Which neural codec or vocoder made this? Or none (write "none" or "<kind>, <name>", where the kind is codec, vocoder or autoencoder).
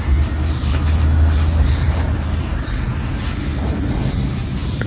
none